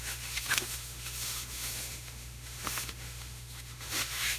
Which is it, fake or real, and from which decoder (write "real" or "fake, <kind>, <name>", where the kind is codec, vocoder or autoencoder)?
fake, autoencoder, DAC-VAE